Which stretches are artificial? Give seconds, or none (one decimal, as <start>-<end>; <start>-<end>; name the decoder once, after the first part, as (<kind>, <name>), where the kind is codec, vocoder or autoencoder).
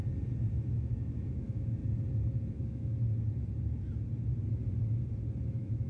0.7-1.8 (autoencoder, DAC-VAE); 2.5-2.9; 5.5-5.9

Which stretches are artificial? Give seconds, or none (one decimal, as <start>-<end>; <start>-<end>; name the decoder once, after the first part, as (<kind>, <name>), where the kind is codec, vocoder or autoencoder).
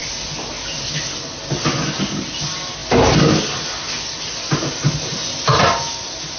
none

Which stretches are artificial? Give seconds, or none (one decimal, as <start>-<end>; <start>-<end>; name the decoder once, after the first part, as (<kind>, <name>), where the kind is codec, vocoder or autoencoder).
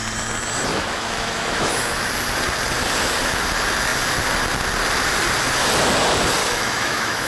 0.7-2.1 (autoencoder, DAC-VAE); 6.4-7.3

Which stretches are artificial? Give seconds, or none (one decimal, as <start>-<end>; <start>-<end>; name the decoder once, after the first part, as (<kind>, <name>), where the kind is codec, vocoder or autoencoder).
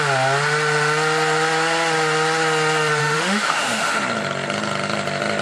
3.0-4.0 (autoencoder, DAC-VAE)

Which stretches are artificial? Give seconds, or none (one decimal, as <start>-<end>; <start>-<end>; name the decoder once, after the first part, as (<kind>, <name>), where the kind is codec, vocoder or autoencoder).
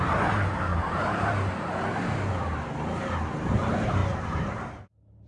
none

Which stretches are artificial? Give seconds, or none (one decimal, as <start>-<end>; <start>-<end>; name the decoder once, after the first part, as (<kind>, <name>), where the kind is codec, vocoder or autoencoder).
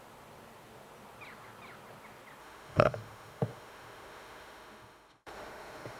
2.4-6.0 (autoencoder, DAC-VAE)